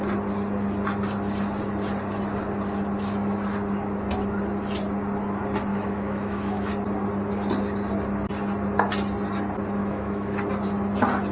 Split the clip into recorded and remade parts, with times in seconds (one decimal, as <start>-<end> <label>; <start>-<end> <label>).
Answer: 0.0-5.7 recorded; 5.7-6.7 remade; 6.7-9.8 recorded; 9.8-10.4 remade; 10.4-11.3 recorded